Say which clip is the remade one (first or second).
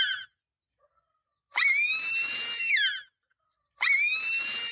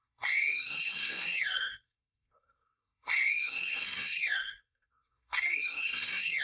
second